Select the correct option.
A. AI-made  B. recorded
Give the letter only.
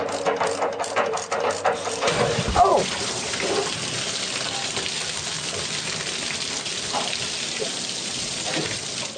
B